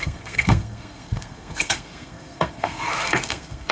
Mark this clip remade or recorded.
remade